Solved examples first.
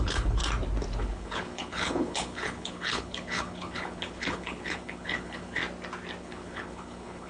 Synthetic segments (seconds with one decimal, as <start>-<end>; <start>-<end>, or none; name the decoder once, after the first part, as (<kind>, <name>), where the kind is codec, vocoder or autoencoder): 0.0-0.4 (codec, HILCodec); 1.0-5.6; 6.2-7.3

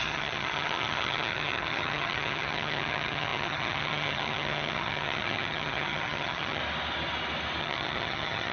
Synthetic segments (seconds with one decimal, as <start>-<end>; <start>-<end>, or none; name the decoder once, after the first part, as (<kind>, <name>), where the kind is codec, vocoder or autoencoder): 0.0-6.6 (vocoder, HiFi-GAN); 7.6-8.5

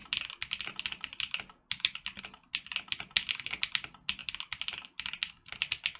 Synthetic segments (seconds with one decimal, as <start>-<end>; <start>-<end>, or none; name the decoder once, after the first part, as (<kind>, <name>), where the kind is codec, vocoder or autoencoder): none

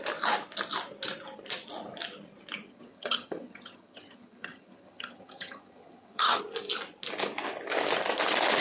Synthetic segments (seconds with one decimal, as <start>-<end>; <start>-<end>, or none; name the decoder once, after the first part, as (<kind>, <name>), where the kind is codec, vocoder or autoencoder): 2.7-6.4 (vocoder, HiFi-GAN)